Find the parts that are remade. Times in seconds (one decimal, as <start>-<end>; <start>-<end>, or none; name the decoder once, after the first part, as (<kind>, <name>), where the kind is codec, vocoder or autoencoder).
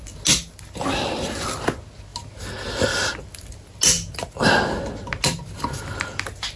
none